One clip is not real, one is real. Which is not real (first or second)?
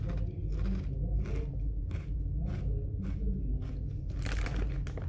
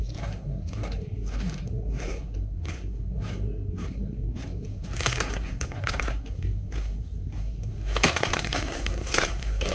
second